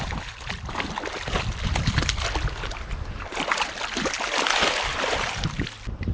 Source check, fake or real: real